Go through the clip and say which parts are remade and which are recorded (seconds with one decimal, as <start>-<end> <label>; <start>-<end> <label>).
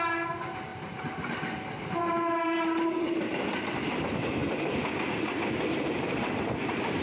0.0-4.4 remade; 4.4-5.9 recorded; 5.9-7.0 remade